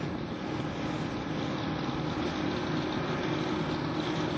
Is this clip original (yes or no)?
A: yes